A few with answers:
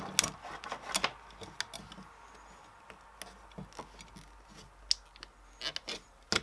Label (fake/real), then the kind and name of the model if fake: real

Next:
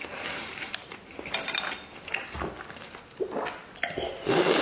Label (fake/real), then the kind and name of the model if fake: real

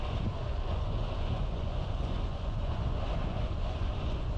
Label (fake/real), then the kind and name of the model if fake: fake, vocoder, Vocos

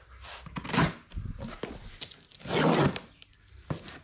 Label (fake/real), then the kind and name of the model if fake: real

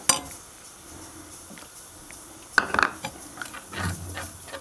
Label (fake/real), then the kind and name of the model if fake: real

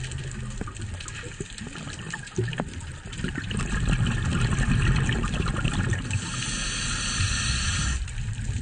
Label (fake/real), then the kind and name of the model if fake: real